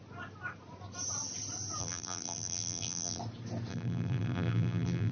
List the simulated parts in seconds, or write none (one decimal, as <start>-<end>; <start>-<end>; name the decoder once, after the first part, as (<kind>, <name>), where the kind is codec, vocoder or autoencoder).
1.8-3.2 (vocoder, BigVGAN v2); 3.7-5.1